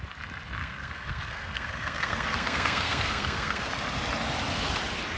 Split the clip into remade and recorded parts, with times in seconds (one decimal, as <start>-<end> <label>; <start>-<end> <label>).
0.0-0.6 recorded; 0.6-3.7 remade; 3.7-5.2 recorded